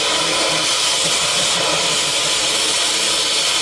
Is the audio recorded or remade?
recorded